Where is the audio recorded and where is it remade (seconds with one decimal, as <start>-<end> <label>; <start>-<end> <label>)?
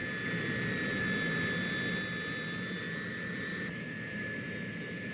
0.0-3.1 recorded; 3.1-5.1 remade